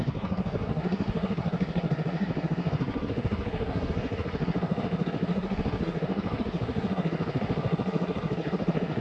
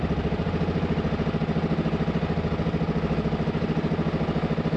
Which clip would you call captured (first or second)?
second